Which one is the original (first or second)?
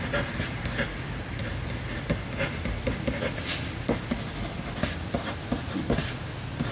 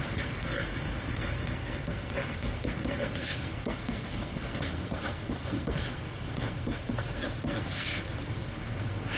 first